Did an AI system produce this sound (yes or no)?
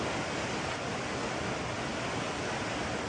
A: no